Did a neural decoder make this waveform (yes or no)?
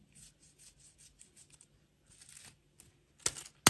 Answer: no